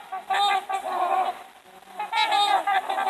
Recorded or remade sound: recorded